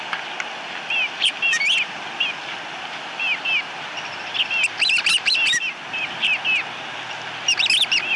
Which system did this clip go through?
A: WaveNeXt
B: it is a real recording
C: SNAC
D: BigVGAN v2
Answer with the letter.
D